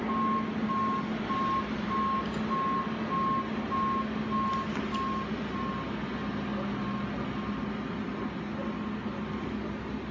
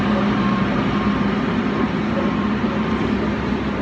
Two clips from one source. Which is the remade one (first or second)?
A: second